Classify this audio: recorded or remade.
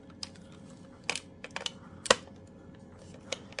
recorded